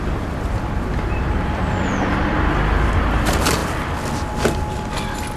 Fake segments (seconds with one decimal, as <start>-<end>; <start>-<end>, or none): 0.0-3.6